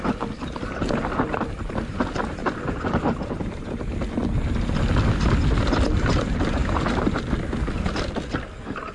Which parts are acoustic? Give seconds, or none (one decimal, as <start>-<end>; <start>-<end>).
0.0-2.4; 3.9-6.6; 7.2-8.9